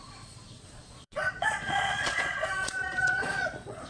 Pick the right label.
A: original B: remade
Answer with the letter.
B